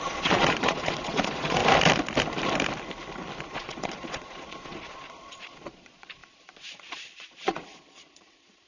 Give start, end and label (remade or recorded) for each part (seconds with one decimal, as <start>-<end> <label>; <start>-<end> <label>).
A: 0.0-1.6 remade; 1.6-3.5 recorded; 3.5-8.7 remade